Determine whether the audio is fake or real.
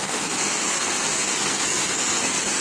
fake